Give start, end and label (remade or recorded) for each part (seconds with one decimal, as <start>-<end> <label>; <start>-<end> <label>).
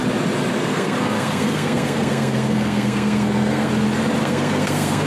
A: 0.0-0.6 recorded; 0.6-3.7 remade; 3.7-4.2 recorded; 4.2-5.1 remade